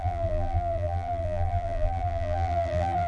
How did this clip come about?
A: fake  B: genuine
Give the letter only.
A